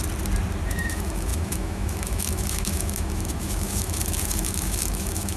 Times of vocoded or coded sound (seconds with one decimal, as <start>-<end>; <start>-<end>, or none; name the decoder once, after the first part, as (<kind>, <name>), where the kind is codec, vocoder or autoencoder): 0.7-5.4 (autoencoder, DAC-VAE)